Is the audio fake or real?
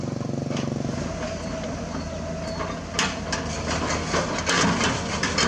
real